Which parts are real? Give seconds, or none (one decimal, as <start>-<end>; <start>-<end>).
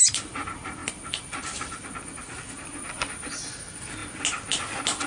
0.0-5.1